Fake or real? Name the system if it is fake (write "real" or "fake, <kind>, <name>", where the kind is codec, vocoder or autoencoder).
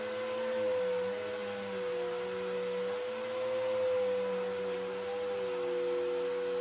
real